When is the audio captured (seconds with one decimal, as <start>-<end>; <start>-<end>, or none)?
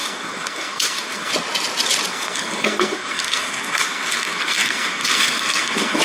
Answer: 1.3-2.1